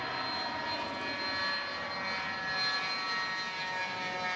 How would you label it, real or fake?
real